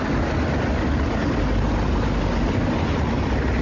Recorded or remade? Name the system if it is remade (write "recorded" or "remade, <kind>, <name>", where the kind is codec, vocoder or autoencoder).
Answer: recorded